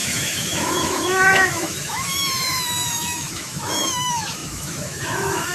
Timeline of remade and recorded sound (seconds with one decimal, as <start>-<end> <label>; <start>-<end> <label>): 0.0-5.5 remade

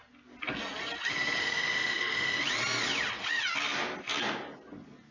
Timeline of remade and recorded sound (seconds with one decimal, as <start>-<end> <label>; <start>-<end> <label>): 0.0-1.4 recorded; 1.4-2.4 remade; 2.4-5.1 recorded

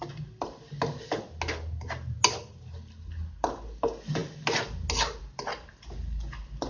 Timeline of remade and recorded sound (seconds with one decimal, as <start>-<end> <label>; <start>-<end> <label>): 0.0-6.7 recorded

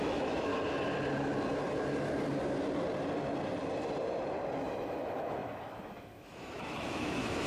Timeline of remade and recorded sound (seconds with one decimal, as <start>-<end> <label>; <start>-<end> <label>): 0.0-0.5 remade; 0.5-4.6 recorded; 4.6-7.5 remade

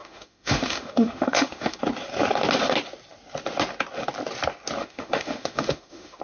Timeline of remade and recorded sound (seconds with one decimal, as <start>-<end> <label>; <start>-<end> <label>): 0.0-1.8 remade; 1.8-4.8 recorded; 4.8-6.2 remade

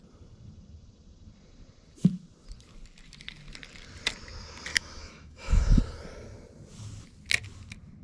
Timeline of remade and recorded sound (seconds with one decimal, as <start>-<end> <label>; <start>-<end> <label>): 0.0-4.7 recorded; 4.7-5.8 remade; 5.8-8.0 recorded

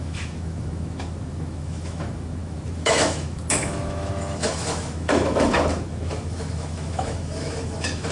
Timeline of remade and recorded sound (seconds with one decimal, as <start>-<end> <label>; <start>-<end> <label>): 0.0-8.1 remade

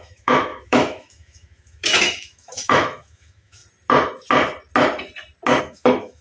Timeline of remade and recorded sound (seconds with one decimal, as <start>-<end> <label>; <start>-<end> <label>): 0.0-3.6 remade; 3.6-5.6 recorded; 5.6-6.2 remade